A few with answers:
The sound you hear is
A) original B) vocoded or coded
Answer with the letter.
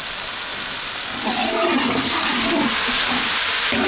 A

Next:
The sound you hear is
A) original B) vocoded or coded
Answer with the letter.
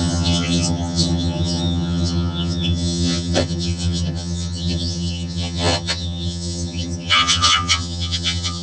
B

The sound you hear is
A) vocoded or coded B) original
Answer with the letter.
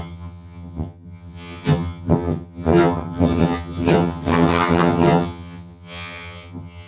A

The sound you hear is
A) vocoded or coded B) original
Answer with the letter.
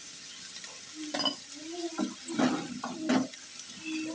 B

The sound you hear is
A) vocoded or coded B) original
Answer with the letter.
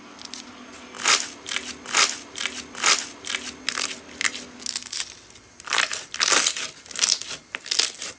B